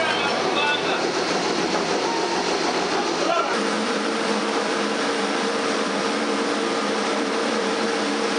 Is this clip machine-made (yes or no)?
yes